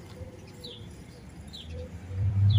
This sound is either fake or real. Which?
fake